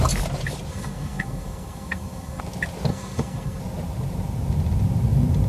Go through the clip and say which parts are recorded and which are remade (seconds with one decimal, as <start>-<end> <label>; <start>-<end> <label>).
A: 0.0-0.7 recorded; 0.7-2.4 remade; 2.4-2.9 recorded; 2.9-3.6 remade; 3.6-5.5 recorded